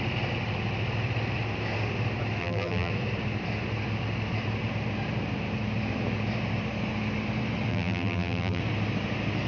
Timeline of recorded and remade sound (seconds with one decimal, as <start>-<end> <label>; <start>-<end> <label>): 0.0-2.4 recorded; 2.4-2.9 remade; 2.9-7.7 recorded; 7.7-8.6 remade; 8.6-9.5 recorded